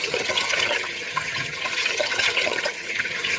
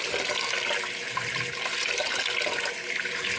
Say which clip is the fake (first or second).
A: first